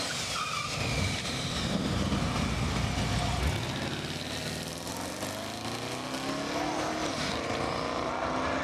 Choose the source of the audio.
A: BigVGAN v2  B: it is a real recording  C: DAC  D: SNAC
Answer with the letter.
B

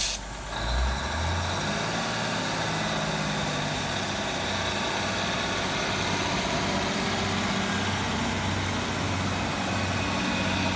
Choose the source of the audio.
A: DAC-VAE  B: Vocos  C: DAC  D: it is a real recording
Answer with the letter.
D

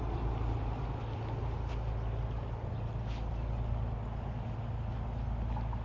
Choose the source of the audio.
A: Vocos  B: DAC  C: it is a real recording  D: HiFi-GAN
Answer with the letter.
C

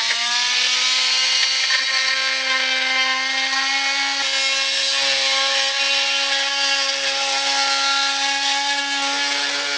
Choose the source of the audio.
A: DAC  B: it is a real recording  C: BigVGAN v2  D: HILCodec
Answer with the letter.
B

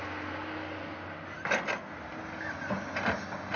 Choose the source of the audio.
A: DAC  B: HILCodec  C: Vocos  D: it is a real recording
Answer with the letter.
D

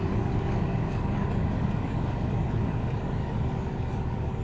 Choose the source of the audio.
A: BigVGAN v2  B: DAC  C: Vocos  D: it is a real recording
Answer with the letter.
B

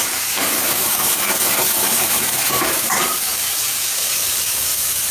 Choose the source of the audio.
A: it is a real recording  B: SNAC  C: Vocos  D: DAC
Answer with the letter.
D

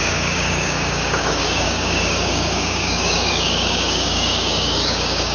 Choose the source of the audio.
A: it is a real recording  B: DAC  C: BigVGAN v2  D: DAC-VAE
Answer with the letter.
B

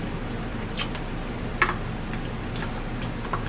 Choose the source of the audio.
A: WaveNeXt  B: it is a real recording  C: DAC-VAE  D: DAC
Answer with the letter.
B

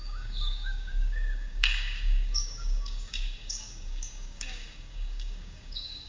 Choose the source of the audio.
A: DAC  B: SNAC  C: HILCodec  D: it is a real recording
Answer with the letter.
A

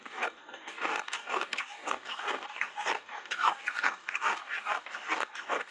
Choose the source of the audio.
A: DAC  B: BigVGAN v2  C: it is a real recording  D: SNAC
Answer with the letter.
A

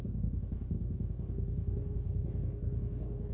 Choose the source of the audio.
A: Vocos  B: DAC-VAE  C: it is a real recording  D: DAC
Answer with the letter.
D